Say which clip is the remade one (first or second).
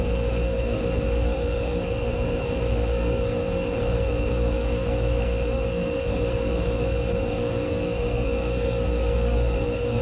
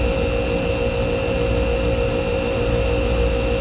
first